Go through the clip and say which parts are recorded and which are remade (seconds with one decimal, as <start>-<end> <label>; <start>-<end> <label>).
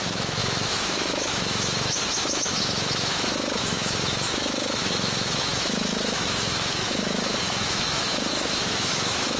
0.0-9.4 remade